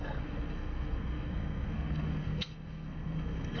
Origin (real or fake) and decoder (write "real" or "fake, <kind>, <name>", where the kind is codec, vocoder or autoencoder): fake, codec, SNAC